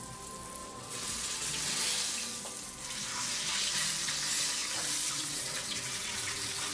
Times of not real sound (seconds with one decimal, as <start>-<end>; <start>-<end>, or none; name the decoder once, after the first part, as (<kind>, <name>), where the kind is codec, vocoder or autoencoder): 0.6-1.8 (vocoder, WaveNeXt); 4.6-6.7

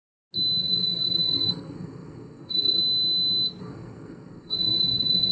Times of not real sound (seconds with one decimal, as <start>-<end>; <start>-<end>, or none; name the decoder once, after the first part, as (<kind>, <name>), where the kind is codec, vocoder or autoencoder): 0.6-2.8 (codec, SNAC); 3.6-5.3

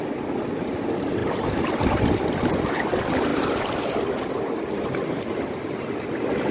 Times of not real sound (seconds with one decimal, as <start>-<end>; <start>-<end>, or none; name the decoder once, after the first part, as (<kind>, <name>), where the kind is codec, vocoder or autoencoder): 1.2-2.7 (vocoder, BigVGAN v2); 3.3-4.2

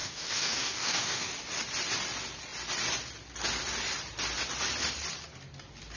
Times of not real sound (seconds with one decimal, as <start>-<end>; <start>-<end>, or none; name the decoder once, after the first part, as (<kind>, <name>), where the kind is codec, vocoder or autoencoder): 0.0-1.3 (codec, DAC)

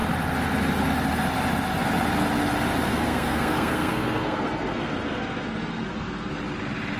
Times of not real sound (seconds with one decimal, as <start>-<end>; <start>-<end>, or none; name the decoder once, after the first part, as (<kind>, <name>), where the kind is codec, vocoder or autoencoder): 2.9-6.3 (codec, SNAC)

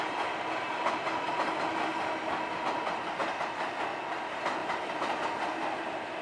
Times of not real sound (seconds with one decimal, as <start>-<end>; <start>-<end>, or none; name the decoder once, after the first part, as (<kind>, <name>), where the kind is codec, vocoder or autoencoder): 3.2-3.7 (vocoder, BigVGAN v2); 4.6-5.8